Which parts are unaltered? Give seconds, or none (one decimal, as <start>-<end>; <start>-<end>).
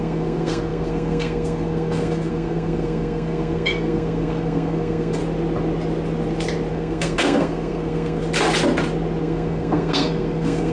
5.2-6.7; 8.2-9.2